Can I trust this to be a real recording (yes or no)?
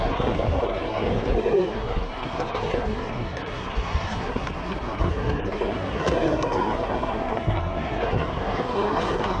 no